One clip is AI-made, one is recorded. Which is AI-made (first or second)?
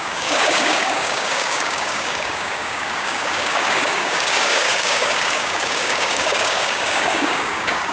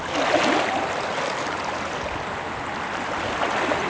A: first